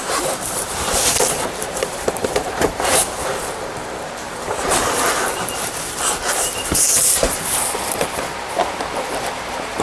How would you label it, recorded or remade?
remade